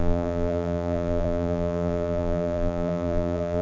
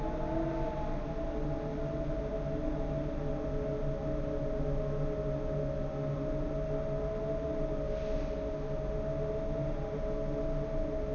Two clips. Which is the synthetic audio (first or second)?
first